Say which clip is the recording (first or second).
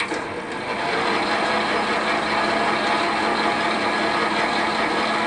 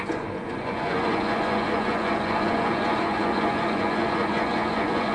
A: first